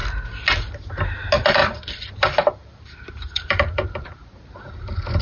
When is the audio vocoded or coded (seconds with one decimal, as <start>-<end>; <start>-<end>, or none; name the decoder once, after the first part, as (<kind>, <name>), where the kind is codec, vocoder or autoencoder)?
1.6-2.1 (vocoder, BigVGAN v2); 2.6-4.1